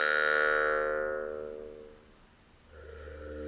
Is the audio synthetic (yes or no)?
no